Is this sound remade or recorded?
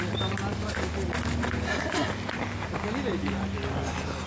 recorded